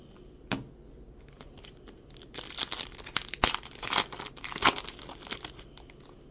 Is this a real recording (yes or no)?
yes